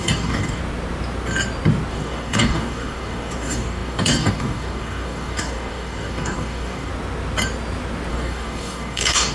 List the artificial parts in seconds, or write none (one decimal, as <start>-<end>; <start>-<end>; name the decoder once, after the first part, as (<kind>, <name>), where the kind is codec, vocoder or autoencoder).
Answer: 0.0-0.6 (codec, DAC); 1.9-6.9; 8.1-9.3